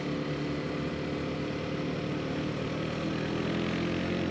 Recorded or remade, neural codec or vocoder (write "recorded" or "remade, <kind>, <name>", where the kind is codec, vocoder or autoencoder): recorded